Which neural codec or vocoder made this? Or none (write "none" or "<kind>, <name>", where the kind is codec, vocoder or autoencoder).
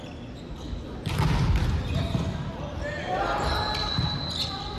none